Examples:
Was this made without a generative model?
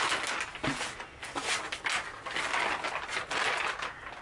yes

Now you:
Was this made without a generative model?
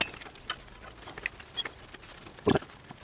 yes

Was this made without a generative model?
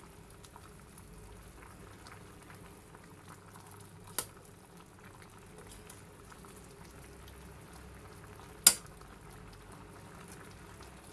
yes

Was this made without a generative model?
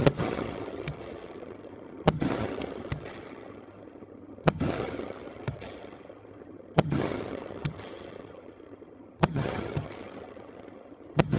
no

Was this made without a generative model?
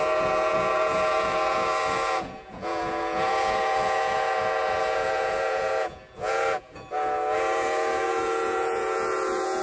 no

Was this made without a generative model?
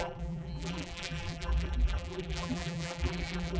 no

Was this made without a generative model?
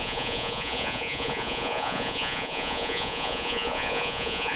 no